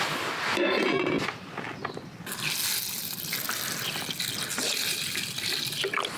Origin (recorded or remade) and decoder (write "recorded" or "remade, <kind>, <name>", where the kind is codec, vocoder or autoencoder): recorded